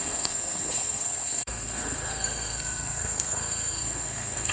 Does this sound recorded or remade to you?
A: remade